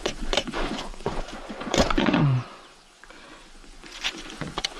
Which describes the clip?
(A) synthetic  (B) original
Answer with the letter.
A